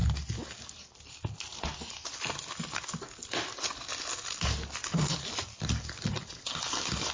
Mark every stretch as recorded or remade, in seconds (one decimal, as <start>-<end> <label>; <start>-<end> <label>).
0.0-7.1 recorded